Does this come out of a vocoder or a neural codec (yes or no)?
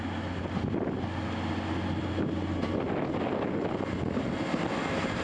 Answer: no